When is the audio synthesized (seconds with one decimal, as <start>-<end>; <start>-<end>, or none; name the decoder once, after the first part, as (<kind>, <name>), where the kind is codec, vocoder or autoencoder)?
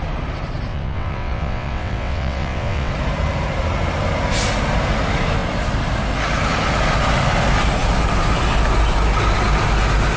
0.7-2.9 (vocoder, WaveNeXt)